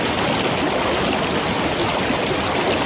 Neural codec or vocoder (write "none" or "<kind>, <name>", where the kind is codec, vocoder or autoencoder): none